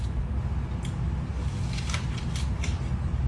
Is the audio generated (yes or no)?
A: no